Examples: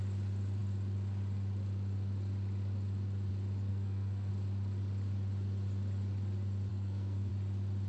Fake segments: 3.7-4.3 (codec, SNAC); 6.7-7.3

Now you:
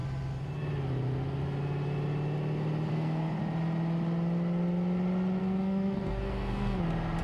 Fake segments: 2.9-3.4 (codec, SNAC); 5.4-6.8

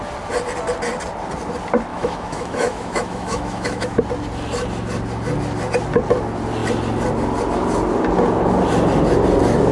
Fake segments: 1.9-4.0 (autoencoder, DAC-VAE)

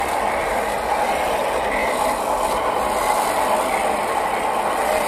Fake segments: none

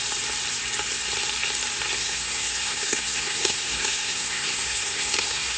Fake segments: 2.0-5.6 (codec, SNAC)

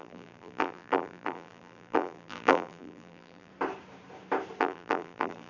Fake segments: 0.0-3.5 (vocoder, BigVGAN v2); 4.6-5.5